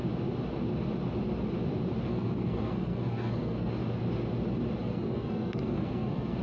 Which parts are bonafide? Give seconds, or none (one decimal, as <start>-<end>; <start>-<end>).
0.0-2.1; 3.7-4.8